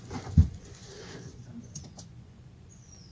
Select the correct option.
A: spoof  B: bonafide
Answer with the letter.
A